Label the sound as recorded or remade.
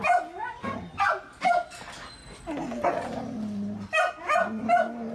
recorded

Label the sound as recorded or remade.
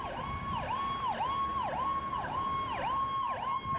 recorded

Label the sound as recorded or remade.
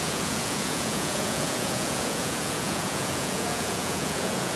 remade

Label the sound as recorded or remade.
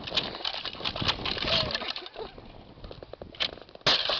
recorded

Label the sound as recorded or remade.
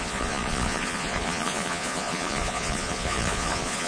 remade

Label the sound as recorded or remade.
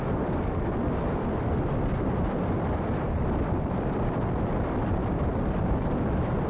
remade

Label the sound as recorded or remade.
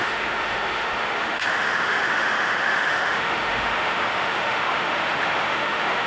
remade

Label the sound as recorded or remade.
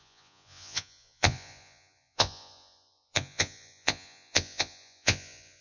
remade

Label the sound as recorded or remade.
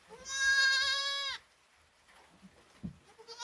recorded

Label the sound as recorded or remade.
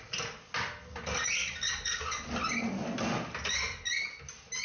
recorded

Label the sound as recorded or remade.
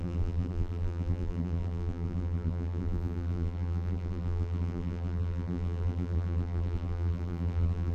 remade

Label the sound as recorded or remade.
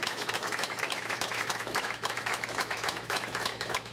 remade